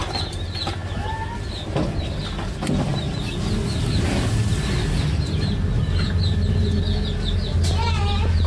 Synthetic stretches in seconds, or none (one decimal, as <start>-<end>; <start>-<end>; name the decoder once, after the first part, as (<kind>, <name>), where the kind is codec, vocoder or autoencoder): none